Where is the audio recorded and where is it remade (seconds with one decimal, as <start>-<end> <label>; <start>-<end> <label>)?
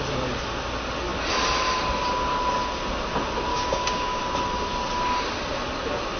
0.0-3.5 recorded; 3.5-4.2 remade; 4.2-6.2 recorded